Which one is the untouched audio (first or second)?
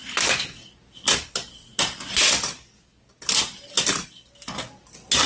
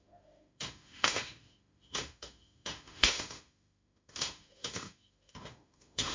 first